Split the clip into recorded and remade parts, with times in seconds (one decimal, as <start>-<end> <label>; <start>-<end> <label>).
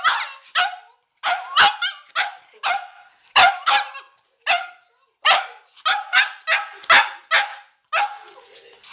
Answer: 0.0-8.9 recorded